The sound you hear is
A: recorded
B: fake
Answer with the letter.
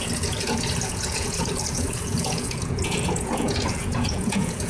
B